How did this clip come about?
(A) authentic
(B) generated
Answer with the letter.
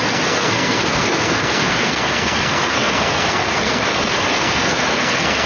B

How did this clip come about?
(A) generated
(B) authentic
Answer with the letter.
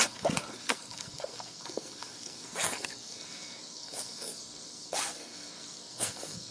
A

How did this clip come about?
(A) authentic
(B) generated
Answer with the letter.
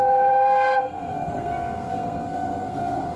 B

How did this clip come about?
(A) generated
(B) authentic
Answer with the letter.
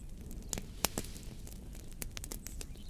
B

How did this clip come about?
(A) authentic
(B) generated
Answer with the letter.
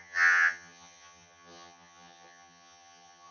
B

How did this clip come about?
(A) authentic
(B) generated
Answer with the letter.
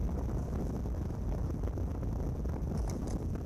B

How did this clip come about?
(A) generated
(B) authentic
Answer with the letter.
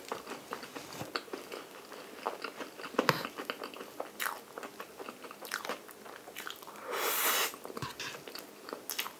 B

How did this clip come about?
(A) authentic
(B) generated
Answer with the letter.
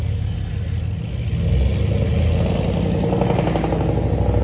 A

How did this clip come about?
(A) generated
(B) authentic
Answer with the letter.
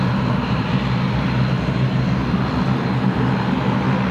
B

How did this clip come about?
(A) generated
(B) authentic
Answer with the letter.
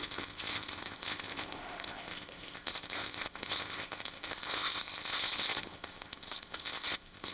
A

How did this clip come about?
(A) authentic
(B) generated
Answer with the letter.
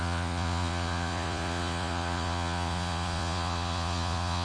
B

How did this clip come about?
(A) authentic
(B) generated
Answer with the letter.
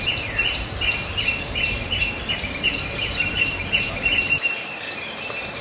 B